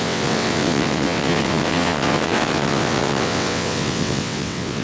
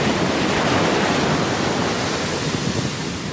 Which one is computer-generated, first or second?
first